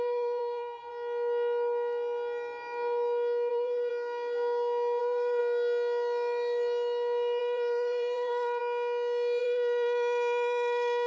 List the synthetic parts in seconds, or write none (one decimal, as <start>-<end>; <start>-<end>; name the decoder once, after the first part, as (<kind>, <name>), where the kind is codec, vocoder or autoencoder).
0.0-0.9 (vocoder, BigVGAN v2); 3.5-3.9; 5.0-5.4; 7.4-8.6; 9.4-11.1